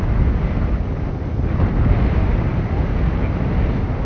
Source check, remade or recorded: recorded